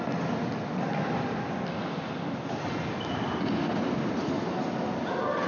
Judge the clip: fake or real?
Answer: real